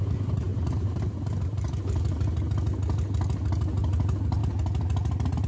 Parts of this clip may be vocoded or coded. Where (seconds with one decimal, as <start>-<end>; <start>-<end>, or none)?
0.5-2.4